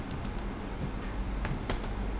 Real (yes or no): yes